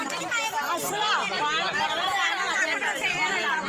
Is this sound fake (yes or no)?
no